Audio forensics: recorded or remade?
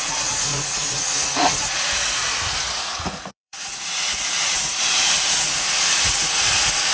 remade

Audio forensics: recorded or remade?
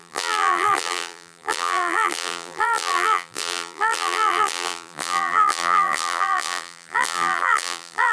remade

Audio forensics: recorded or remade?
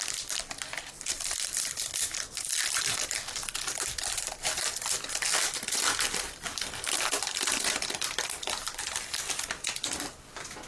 remade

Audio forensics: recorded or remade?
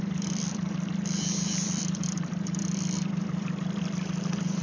remade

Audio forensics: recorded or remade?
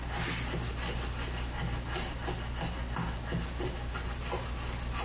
recorded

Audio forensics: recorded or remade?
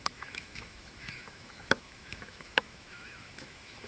remade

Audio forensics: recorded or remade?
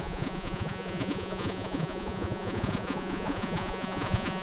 remade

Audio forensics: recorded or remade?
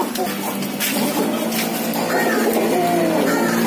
recorded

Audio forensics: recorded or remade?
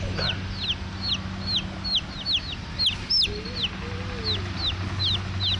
recorded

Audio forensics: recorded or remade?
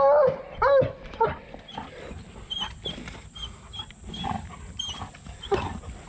recorded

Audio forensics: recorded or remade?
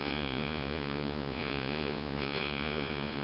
remade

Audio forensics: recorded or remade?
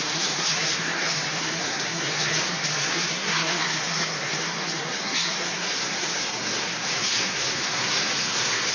remade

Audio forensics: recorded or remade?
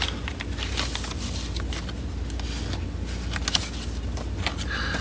recorded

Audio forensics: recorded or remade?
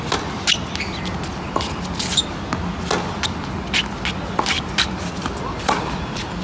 recorded